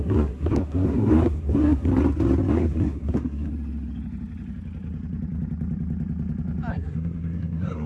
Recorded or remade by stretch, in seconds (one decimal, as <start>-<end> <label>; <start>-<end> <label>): 0.0-1.9 remade; 1.9-2.5 recorded; 2.5-3.5 remade; 3.5-6.7 recorded; 6.7-7.9 remade